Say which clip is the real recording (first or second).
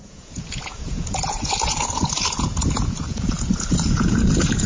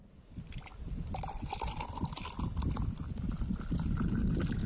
second